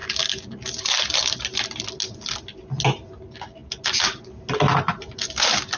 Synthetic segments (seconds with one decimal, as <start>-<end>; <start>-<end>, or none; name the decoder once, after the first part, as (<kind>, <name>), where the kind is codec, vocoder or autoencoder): none